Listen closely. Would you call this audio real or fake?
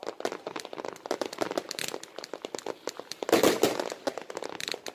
real